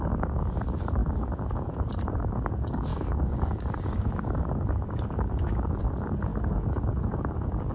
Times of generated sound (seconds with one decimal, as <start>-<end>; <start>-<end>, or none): 0.0-7.7